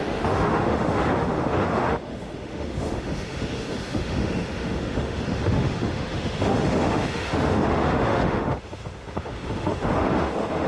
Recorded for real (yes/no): no